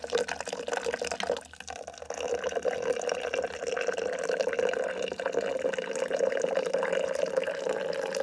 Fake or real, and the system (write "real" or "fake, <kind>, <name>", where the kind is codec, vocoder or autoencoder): real